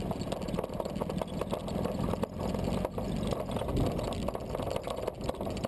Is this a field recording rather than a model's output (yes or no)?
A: yes